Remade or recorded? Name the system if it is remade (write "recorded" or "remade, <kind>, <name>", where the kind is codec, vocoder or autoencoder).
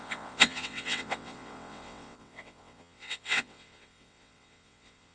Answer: remade, vocoder, WaveNeXt